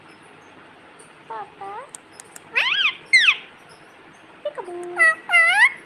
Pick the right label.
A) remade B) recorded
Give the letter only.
B